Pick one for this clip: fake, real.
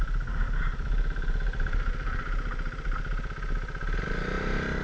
real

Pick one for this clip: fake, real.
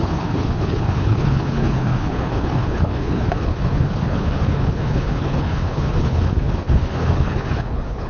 fake